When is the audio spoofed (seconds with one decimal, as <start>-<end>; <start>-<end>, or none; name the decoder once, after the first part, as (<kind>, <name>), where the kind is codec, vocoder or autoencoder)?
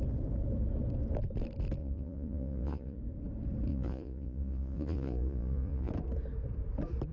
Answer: 1.8-3.0 (vocoder, Vocos); 3.7-5.9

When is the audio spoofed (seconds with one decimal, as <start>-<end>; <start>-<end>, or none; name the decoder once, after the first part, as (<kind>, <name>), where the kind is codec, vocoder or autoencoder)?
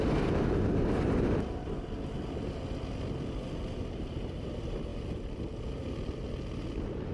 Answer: none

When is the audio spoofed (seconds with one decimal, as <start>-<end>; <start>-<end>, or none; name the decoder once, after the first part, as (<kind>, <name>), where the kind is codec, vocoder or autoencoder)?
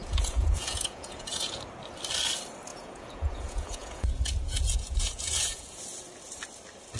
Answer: 0.0-1.6 (vocoder, Vocos); 2.7-5.8